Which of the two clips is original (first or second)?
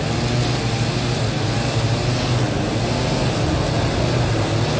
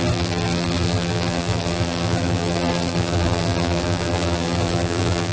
first